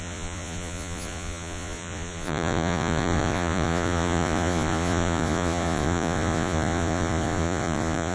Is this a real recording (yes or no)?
no